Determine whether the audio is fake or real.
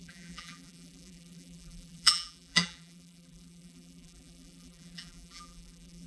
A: fake